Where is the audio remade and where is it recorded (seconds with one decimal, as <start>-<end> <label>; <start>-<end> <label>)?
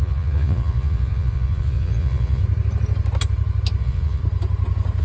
0.0-2.4 remade; 2.4-3.8 recorded; 3.8-4.2 remade; 4.2-5.0 recorded